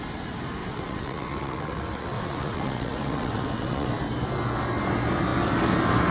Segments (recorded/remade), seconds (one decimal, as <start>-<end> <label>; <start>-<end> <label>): 0.0-0.6 recorded; 0.6-3.9 remade; 3.9-6.1 recorded